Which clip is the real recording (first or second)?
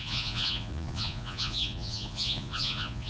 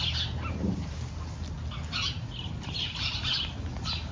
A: second